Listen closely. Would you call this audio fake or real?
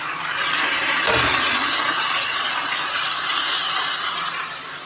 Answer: fake